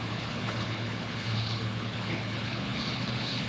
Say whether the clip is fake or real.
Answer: fake